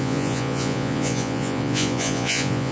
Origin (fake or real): fake